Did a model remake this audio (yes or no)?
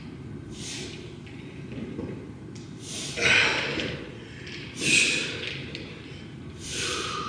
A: no